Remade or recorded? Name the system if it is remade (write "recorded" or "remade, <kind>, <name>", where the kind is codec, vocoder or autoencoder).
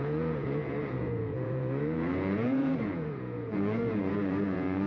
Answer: remade, vocoder, Vocos